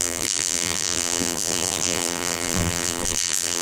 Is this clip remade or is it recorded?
remade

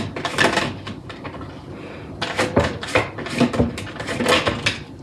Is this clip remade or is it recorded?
recorded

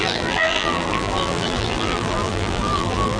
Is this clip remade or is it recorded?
remade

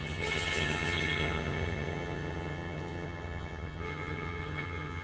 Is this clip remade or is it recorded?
remade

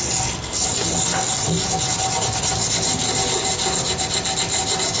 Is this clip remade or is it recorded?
recorded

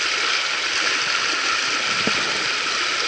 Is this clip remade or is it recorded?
recorded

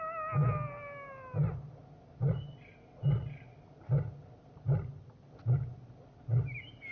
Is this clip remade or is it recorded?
recorded